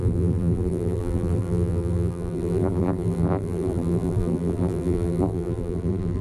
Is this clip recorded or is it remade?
remade